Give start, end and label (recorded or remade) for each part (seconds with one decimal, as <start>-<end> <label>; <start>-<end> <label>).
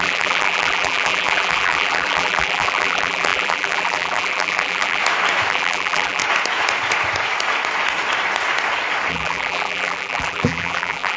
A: 0.0-5.0 remade; 5.0-5.5 recorded; 5.5-6.2 remade; 6.2-9.1 recorded; 9.1-11.2 remade